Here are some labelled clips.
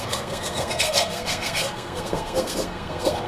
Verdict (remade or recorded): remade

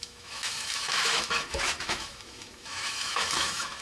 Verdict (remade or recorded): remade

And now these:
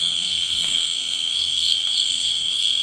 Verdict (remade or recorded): remade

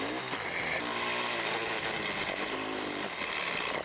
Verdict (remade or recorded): recorded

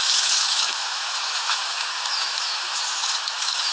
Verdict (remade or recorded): remade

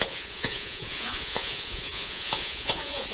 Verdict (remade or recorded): remade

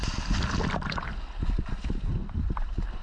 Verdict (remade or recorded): recorded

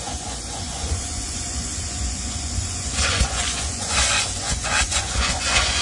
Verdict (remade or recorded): remade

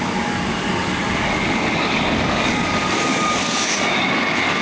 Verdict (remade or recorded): remade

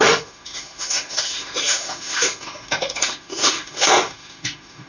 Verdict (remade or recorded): remade